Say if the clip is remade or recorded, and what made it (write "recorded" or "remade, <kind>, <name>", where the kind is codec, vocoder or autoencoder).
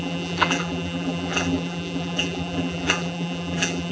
remade, vocoder, BigVGAN v2